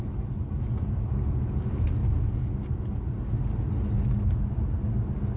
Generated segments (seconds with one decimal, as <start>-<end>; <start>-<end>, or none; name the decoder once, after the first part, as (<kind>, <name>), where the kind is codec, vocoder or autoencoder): none